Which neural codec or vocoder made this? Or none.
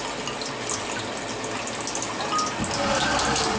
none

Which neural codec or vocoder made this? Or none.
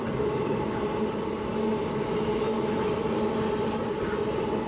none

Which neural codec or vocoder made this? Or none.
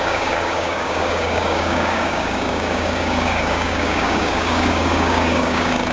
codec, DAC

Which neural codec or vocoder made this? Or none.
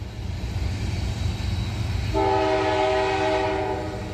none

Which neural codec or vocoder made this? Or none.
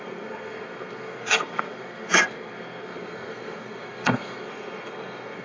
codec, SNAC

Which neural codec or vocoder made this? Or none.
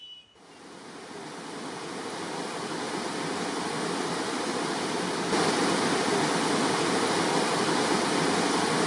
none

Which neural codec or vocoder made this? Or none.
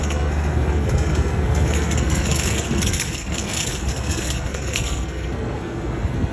codec, SNAC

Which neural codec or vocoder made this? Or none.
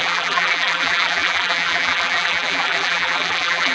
vocoder, BigVGAN v2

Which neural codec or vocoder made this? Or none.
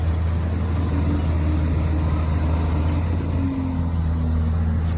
none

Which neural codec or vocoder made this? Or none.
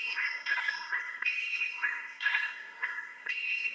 codec, SNAC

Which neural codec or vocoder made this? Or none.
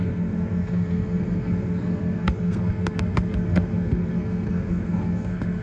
codec, SNAC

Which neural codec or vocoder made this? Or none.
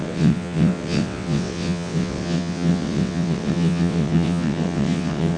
vocoder, WaveNeXt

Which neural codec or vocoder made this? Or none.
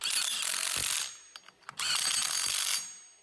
none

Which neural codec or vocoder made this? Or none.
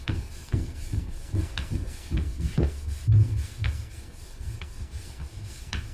codec, SNAC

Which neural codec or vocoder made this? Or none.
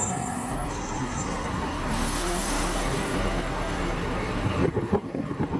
codec, SNAC